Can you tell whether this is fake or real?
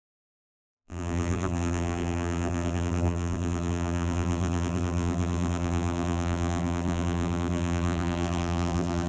fake